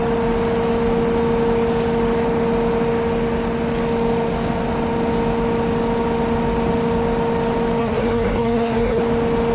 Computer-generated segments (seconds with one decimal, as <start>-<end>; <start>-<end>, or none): 7.8-9.0